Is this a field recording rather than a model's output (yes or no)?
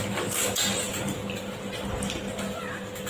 yes